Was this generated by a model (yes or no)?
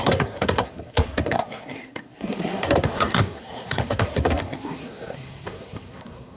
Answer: yes